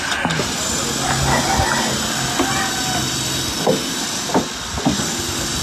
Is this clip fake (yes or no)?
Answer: no